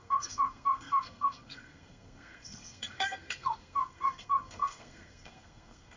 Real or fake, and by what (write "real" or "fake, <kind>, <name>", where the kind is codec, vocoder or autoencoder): fake, codec, SNAC